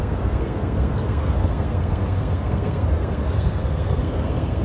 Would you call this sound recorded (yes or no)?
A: no